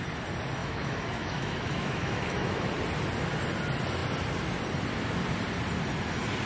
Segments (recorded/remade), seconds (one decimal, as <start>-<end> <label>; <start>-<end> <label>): 0.0-0.6 recorded; 0.6-2.7 remade; 2.7-6.5 recorded